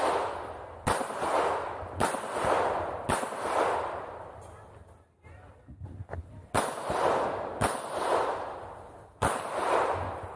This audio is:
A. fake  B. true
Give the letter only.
B